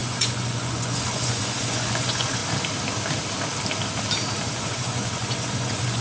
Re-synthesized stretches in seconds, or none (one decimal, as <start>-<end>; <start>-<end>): 0.0-2.4; 4.4-6.0